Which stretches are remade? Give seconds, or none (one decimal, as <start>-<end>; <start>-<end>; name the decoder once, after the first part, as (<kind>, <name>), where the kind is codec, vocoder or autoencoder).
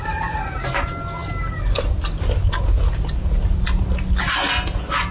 none